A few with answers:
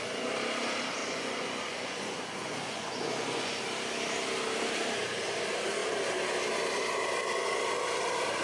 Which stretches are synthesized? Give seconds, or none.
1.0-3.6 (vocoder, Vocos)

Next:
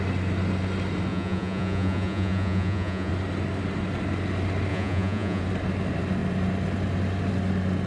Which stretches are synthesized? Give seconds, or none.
1.1-3.1 (vocoder, Vocos); 4.7-5.4

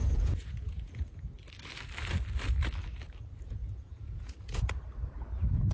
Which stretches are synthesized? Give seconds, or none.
0.0-1.2 (vocoder, Vocos); 3.6-4.7

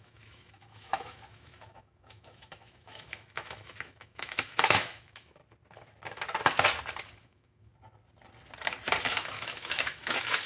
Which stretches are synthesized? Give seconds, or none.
0.0-5.4 (autoencoder, DAC-VAE); 7.0-7.7; 9.1-10.5

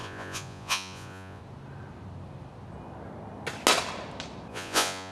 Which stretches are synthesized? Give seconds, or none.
0.0-1.4 (vocoder, Vocos); 4.5-5.1

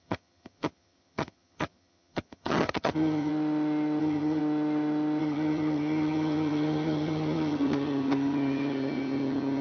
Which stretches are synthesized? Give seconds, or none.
0.0-3.3 (vocoder, HiFi-GAN); 4.0-4.4; 5.2-9.6

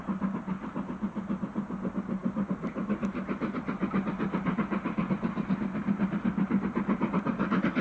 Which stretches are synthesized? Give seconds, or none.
none